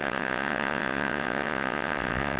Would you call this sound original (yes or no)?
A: no